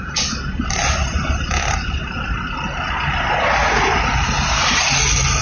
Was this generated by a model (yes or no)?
no